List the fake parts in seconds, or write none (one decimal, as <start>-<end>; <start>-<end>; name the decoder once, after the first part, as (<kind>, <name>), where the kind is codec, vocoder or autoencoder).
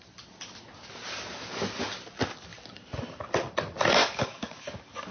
4.0-5.1 (codec, DAC)